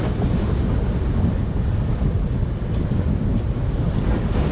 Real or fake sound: real